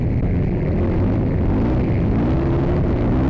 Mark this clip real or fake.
real